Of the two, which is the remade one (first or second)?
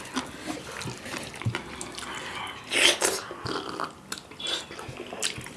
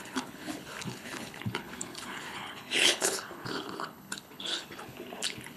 second